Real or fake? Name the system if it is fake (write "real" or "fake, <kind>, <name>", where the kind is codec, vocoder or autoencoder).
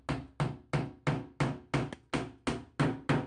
real